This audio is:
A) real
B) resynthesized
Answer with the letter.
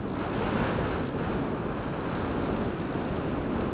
A